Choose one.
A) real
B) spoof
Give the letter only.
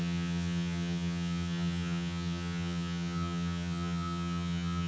B